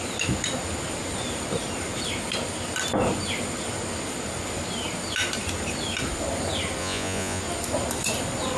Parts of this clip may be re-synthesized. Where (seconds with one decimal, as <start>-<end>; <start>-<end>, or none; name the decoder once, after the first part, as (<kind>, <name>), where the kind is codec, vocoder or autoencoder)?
6.8-7.4 (vocoder, Vocos)